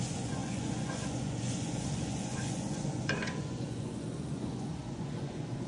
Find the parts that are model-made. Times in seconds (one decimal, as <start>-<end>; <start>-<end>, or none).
0.0-5.7